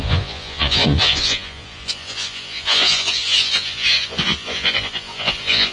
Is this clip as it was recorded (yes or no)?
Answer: no